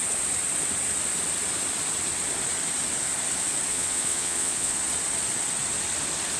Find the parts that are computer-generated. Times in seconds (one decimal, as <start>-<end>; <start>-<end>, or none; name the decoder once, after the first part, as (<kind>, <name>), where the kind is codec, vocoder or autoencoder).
3.7-4.8 (vocoder, Vocos)